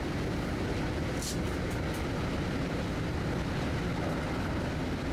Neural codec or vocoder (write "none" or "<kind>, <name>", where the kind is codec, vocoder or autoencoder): none